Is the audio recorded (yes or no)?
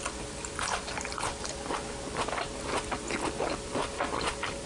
yes